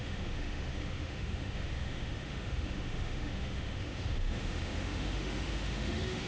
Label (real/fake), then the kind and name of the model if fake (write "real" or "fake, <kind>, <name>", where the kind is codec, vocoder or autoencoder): fake, autoencoder, DAC-VAE